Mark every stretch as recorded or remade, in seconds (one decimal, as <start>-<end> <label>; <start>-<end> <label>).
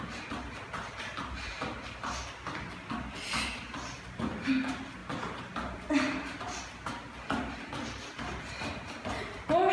0.0-9.7 recorded